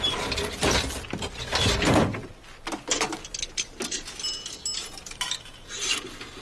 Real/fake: real